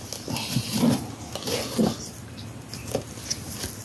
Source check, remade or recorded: recorded